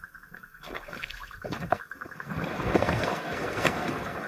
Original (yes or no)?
no